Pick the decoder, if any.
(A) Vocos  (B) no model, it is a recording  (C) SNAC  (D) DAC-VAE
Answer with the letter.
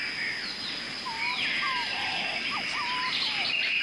B